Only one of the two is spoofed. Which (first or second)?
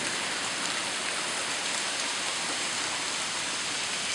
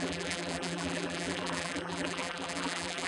second